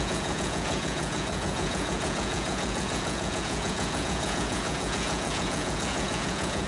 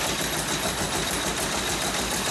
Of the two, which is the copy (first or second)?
first